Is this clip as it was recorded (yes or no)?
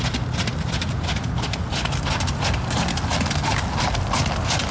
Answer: yes